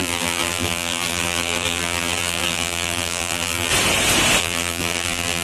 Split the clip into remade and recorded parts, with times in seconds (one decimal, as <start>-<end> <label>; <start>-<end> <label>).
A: 0.0-3.7 remade; 3.7-4.4 recorded; 4.4-5.4 remade